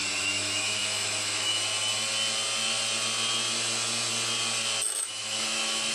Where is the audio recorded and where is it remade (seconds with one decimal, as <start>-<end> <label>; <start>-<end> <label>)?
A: 0.0-1.5 remade; 1.5-5.0 recorded; 5.0-5.9 remade